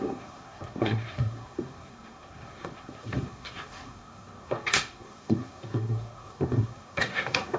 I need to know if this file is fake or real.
fake